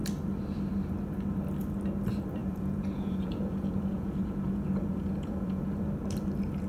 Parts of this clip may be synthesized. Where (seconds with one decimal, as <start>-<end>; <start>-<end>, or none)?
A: 2.4-5.9

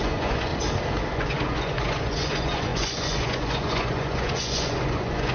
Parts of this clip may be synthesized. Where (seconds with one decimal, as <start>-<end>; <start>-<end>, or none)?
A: 0.0-0.5; 1.1-5.3

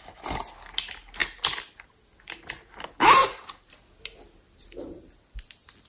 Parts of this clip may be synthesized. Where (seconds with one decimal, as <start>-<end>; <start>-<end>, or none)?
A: 3.2-3.7

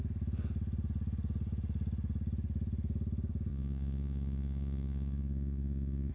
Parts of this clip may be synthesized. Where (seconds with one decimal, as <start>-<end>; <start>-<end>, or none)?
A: 3.5-6.1

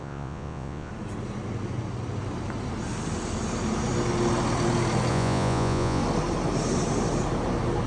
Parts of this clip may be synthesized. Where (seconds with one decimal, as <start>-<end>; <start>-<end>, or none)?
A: 0.0-0.9; 5.1-6.0

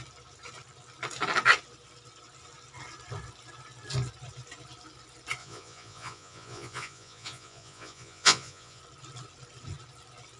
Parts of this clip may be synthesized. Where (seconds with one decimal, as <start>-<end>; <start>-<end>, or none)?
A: 5.4-8.8

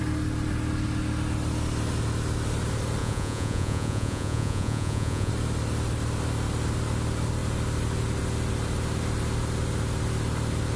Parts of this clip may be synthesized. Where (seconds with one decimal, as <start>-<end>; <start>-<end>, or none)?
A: 3.0-5.3